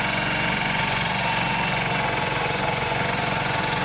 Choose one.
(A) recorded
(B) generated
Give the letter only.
B